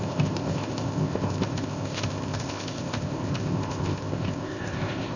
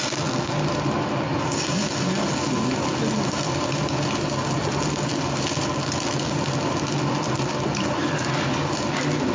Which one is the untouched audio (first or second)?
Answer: second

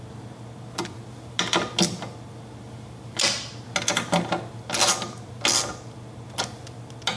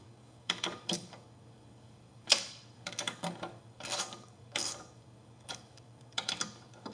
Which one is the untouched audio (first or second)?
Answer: first